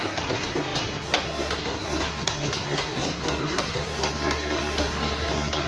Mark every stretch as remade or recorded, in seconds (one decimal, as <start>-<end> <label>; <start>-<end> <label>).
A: 0.0-5.7 remade